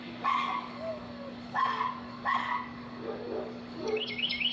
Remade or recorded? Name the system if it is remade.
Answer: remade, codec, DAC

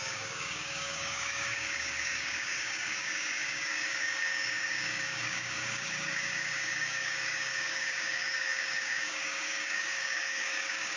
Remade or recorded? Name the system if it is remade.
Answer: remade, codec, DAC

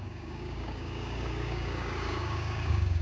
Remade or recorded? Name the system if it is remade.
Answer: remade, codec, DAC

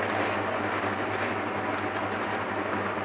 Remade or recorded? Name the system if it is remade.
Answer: recorded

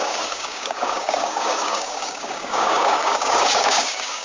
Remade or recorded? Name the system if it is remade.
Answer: remade, codec, DAC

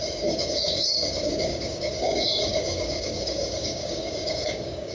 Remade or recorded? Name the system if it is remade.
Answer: remade, codec, DAC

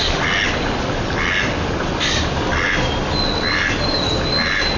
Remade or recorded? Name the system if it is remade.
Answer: recorded